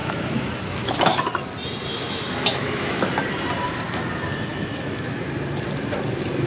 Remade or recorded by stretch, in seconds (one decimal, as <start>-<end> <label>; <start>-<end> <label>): 0.0-1.3 remade; 1.3-1.9 recorded; 1.9-3.1 remade; 3.1-4.5 recorded; 4.5-5.3 remade; 5.3-6.5 recorded